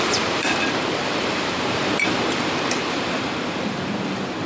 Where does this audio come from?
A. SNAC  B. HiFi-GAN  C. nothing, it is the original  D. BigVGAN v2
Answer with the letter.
D